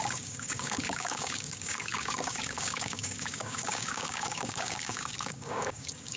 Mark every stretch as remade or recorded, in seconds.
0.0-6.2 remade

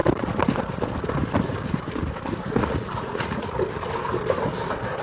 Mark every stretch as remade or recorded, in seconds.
0.0-2.6 recorded; 2.6-3.6 remade; 3.6-5.0 recorded

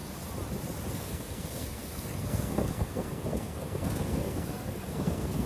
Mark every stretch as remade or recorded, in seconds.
0.0-0.9 recorded; 0.9-5.5 remade

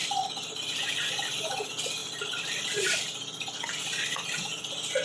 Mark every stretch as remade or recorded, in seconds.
0.0-1.1 remade; 1.1-2.0 recorded; 2.0-3.0 remade; 3.0-5.0 recorded